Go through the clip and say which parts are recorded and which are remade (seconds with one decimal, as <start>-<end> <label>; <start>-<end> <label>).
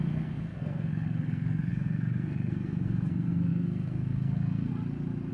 0.0-4.7 remade; 4.7-5.3 recorded